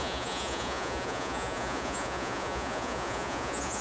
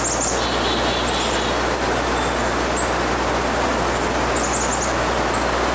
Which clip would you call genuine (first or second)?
second